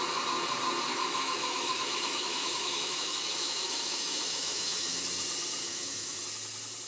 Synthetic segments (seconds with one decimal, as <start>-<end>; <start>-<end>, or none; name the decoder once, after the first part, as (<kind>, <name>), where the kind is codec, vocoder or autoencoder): 0.9-5.0 (autoencoder, DAC-VAE); 5.6-6.2